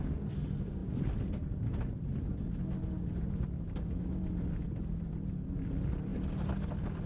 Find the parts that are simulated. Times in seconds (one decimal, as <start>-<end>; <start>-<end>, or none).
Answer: none